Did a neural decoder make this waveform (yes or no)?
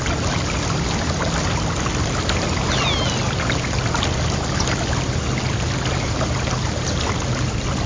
no